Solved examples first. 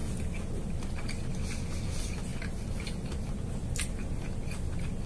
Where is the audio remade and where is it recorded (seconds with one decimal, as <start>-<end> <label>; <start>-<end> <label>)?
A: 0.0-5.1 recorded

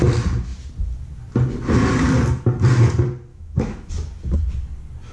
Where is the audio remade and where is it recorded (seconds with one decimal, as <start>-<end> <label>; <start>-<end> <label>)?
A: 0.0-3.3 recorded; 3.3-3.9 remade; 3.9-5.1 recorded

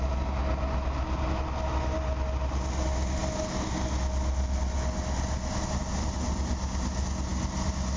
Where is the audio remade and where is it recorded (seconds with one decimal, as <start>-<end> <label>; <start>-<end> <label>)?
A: 0.0-8.0 recorded

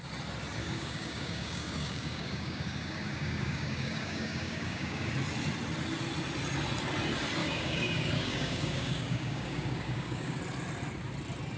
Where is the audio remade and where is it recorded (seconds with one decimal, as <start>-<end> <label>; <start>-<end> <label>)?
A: 0.0-0.6 recorded; 0.6-5.1 remade; 5.1-7.4 recorded; 7.4-10.4 remade; 10.4-11.6 recorded